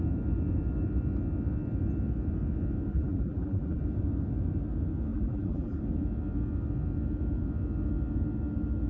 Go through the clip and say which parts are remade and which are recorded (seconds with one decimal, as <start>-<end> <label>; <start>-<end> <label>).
0.0-2.9 recorded; 2.9-3.8 remade; 3.8-5.1 recorded; 5.1-5.8 remade; 5.8-8.9 recorded